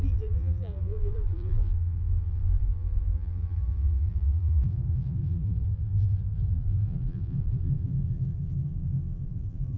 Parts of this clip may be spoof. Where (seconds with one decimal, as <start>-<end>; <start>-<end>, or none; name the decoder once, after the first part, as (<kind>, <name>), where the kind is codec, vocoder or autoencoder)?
0.0-9.8 (vocoder, BigVGAN v2)